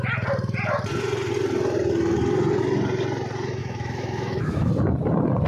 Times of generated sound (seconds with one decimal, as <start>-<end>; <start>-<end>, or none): 3.6-4.7